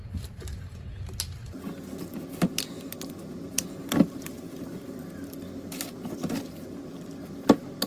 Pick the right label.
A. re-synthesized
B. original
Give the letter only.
B